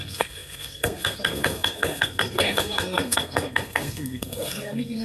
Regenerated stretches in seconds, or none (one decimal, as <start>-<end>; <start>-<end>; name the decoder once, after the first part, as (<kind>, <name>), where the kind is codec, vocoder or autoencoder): 0.0-5.0 (codec, SNAC)